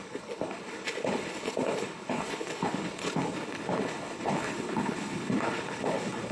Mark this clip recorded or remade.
remade